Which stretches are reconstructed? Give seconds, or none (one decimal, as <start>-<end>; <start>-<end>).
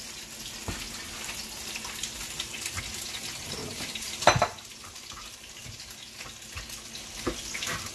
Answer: 3.6-5.8